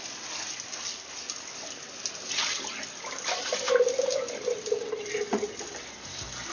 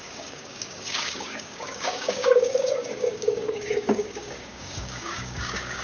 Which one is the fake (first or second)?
second